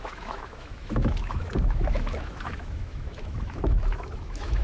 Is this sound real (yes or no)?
no